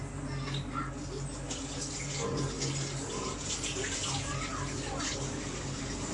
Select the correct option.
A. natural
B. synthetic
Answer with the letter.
A